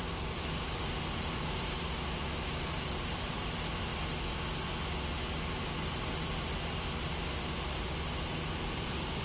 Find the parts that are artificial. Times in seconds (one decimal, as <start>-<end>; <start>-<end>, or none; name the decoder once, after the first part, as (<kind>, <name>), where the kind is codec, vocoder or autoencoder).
0.0-3.9 (vocoder, BigVGAN v2); 6.0-9.2